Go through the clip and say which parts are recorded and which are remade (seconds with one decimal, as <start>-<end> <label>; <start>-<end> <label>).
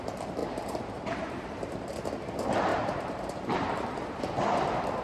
0.0-0.4 recorded; 0.4-1.9 remade; 1.9-2.7 recorded; 2.7-4.2 remade; 4.2-5.0 recorded